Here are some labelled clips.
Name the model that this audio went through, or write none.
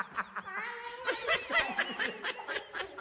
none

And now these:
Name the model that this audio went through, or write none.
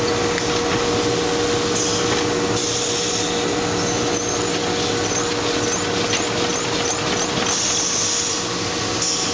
none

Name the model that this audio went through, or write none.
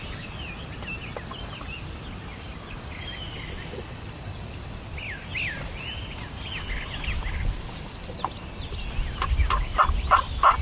none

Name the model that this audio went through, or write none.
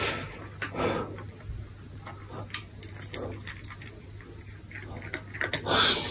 none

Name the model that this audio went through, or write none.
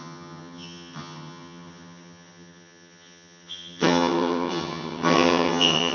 vocoder, HiFi-GAN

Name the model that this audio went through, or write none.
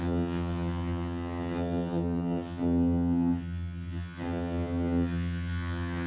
vocoder, HiFi-GAN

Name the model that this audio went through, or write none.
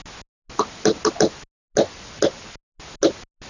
none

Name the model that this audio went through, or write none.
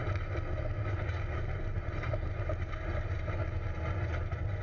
none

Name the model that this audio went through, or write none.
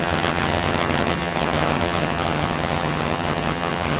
vocoder, HiFi-GAN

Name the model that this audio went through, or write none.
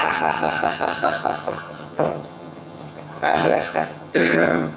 vocoder, HiFi-GAN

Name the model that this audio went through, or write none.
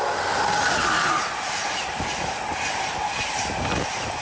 none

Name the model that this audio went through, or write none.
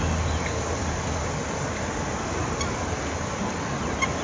none